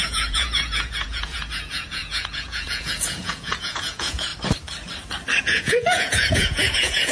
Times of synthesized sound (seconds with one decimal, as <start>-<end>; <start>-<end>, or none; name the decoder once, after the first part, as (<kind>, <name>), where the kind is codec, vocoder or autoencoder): 0.0-4.3 (vocoder, Vocos); 5.4-7.1